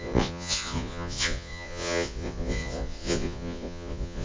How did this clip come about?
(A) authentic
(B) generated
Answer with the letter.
B